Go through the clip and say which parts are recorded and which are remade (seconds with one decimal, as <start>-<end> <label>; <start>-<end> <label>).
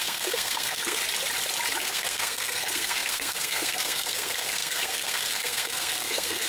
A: 0.0-1.0 remade; 1.0-1.8 recorded; 1.8-6.5 remade